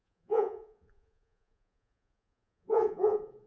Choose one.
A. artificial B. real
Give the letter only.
A